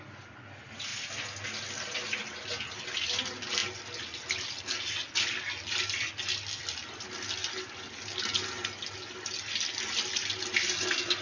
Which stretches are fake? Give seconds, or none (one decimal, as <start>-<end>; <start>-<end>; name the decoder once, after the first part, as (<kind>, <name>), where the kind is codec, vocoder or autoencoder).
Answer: none